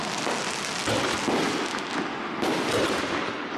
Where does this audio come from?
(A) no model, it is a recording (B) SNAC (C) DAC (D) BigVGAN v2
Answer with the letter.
A